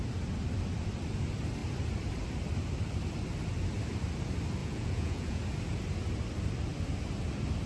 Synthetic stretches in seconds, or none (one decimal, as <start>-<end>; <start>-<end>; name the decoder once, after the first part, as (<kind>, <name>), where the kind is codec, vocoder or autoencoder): 4.6-5.4 (vocoder, Vocos)